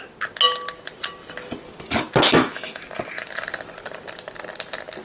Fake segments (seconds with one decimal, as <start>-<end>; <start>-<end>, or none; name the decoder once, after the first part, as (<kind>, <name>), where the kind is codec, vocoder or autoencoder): 2.3-2.8 (autoencoder, DAC-VAE)